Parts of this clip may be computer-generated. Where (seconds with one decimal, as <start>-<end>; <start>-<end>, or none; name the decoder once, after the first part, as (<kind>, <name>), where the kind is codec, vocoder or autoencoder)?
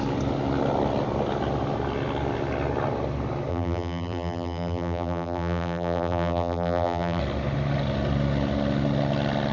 3.5-7.2 (vocoder, BigVGAN v2)